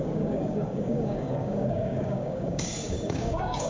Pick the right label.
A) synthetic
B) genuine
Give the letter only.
A